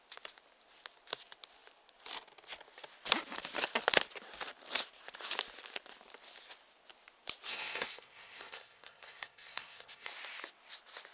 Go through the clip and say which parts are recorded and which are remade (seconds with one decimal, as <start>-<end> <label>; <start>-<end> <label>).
0.0-7.5 recorded; 7.5-10.1 remade; 10.1-11.1 recorded